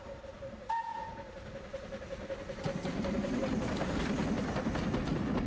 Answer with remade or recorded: recorded